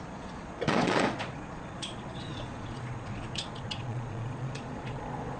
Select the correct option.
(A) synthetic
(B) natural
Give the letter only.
A